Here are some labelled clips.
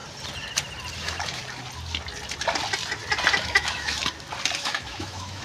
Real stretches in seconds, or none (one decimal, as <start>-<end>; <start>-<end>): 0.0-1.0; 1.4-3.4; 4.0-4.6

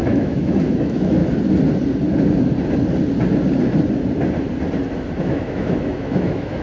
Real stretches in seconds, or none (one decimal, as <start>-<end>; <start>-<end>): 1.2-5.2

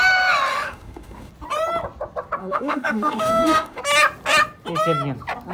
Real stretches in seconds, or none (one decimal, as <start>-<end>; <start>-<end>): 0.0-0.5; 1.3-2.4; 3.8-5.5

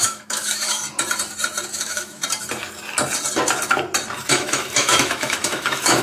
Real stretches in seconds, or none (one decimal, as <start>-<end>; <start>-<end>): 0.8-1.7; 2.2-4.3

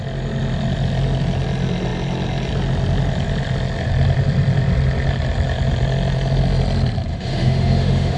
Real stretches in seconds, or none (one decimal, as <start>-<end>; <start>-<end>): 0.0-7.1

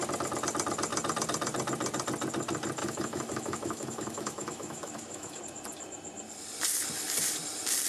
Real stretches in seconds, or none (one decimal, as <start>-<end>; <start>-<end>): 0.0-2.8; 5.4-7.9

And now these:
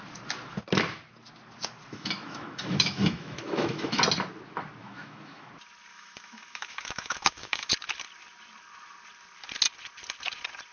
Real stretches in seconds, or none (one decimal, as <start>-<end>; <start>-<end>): 0.0-1.9; 4.0-4.8; 5.5-5.9; 7.7-10.7

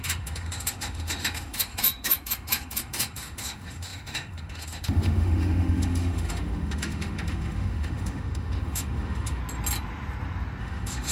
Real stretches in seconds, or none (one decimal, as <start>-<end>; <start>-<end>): 9.4-10.6